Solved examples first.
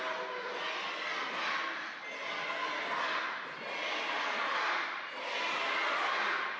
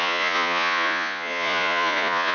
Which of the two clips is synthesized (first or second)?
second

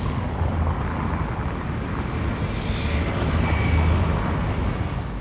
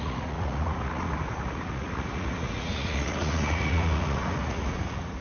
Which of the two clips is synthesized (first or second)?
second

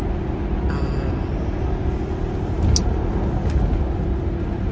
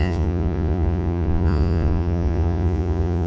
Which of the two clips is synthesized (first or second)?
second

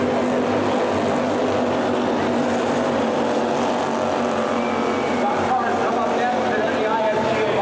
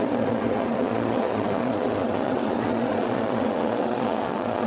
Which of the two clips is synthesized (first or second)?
second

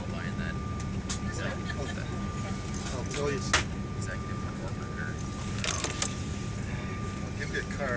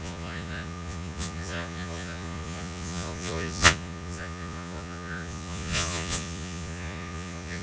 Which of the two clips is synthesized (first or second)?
second